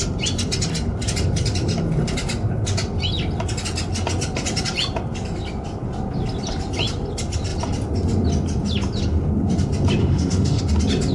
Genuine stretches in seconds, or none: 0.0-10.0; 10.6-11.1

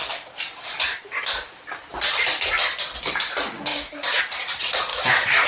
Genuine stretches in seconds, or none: 0.0-3.7; 4.2-4.9

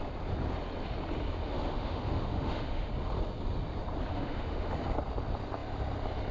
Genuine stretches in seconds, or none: 0.0-1.4; 2.9-4.1; 4.7-6.3

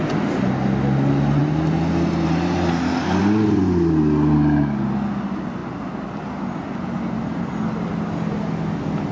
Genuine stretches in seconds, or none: 0.0-9.1